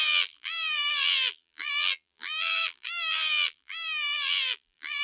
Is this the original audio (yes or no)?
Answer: no